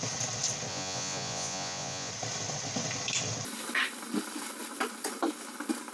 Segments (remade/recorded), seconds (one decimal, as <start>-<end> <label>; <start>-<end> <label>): 0.0-0.7 recorded; 0.7-2.1 remade; 2.1-5.9 recorded

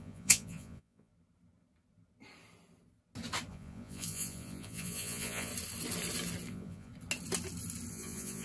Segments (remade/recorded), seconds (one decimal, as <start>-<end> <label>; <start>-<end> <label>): 0.0-1.1 remade; 1.1-3.5 recorded; 3.5-5.5 remade; 5.5-6.5 recorded; 6.5-6.9 remade; 6.9-7.9 recorded; 7.9-8.4 remade